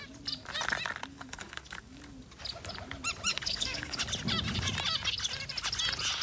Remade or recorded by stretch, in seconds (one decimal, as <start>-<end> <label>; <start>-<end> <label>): 0.0-1.1 recorded; 1.1-2.0 remade; 2.0-3.3 recorded; 3.3-4.0 remade; 4.0-6.2 recorded